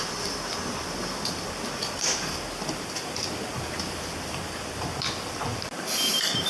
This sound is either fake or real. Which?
fake